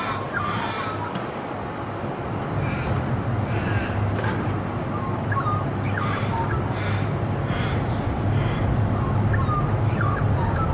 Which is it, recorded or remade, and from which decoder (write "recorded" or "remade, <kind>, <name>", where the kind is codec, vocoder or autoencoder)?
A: recorded